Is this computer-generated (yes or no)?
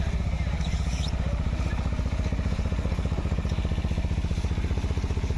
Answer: no